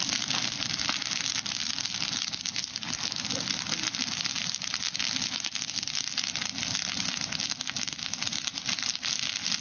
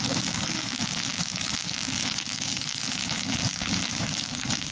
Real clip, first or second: first